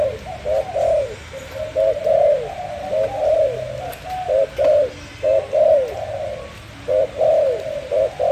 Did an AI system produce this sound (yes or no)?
no